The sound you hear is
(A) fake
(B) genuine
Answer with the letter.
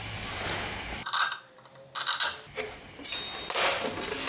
B